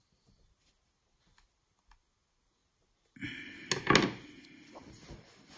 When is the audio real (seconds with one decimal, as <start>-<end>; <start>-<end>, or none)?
0.0-5.6